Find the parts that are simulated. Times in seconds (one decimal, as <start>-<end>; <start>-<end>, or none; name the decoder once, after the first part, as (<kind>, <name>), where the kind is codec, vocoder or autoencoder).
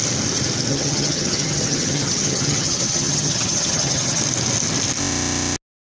0.7-4.2 (vocoder, HiFi-GAN)